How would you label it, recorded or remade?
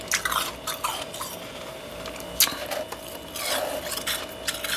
recorded